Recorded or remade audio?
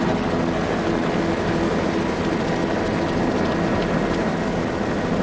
recorded